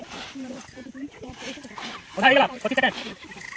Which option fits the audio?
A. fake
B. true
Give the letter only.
A